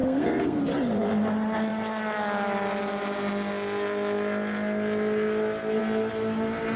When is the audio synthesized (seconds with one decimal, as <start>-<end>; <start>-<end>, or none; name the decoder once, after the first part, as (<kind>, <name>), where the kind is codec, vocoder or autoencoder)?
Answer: 0.0-0.6 (codec, SNAC)